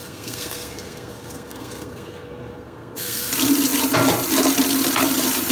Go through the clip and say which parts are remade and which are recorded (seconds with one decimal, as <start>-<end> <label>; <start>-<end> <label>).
0.0-3.3 remade; 3.3-5.5 recorded